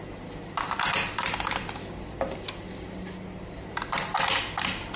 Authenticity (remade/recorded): recorded